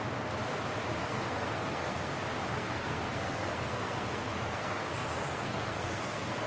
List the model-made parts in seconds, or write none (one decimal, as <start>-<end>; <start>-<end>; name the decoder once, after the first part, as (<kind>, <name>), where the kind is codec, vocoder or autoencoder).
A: 1.0-2.1 (codec, SNAC); 2.5-6.5